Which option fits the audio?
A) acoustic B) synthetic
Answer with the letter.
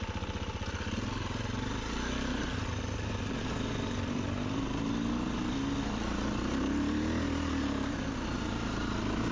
A